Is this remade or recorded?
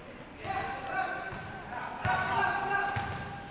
recorded